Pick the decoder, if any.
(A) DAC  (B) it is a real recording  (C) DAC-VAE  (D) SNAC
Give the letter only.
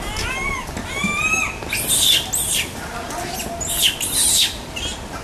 B